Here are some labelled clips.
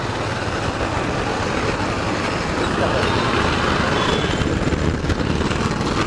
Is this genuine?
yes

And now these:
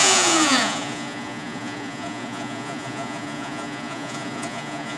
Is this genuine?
no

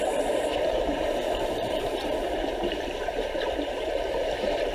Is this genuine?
no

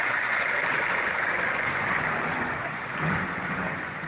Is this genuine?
no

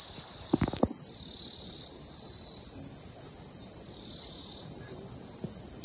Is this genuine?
yes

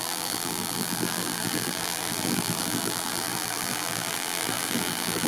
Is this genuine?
no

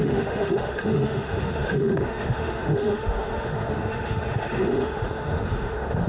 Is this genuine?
no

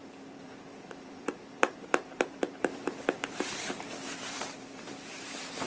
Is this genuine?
no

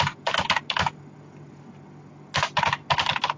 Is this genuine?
yes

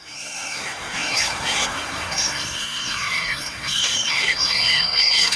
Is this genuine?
no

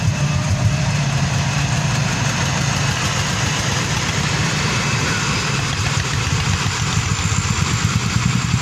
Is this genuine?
no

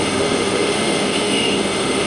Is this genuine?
no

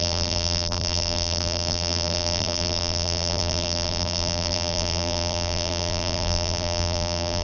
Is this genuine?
no